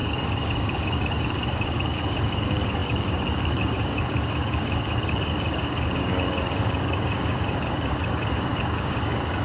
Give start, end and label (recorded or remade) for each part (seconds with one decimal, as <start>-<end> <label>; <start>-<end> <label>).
0.0-9.4 remade